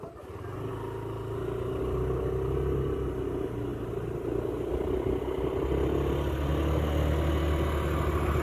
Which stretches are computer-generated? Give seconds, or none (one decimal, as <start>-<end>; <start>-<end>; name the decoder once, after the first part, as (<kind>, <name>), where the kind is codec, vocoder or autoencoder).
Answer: none